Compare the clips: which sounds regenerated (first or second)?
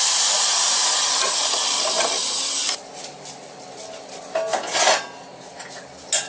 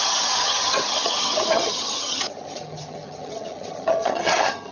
second